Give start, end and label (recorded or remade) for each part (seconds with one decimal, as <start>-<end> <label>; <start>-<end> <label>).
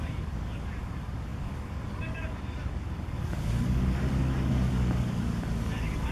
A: 0.0-6.1 remade